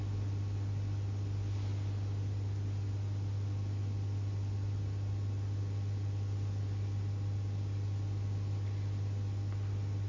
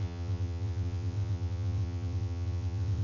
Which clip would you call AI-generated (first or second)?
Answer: second